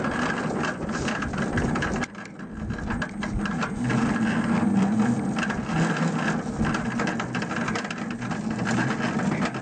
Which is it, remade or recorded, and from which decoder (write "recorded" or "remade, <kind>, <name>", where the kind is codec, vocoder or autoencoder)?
recorded